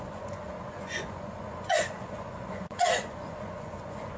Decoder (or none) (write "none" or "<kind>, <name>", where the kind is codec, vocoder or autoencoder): vocoder, Vocos